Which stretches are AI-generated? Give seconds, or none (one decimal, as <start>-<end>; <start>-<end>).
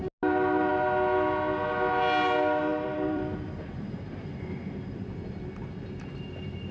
2.7-6.7